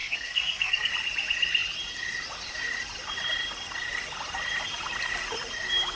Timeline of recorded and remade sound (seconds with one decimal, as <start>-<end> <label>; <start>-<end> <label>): 0.0-0.9 remade; 0.9-6.0 recorded